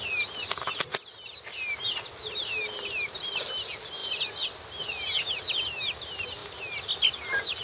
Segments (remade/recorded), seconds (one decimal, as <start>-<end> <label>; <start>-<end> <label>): 0.0-7.6 recorded